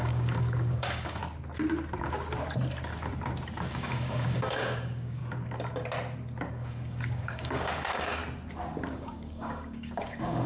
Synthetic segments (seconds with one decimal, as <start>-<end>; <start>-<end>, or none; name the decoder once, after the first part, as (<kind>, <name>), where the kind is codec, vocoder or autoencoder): 0.0-1.2 (codec, DAC); 3.7-5.2; 6.5-8.2; 8.9-10.5

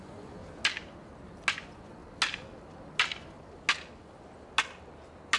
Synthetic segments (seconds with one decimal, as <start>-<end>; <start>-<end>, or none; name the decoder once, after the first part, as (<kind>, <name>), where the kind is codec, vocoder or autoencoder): 0.0-0.4 (vocoder, Vocos); 1.5-2.0